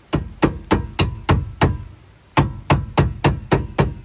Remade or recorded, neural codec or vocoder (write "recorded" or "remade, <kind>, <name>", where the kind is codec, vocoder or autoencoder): recorded